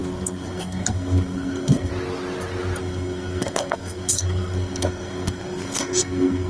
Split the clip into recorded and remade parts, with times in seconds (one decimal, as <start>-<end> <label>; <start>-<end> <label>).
0.0-1.9 remade; 1.9-2.8 recorded; 2.8-6.5 remade